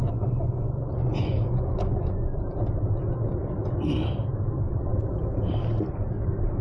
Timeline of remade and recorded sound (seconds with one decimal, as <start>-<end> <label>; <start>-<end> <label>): 0.0-2.4 remade; 2.4-6.6 recorded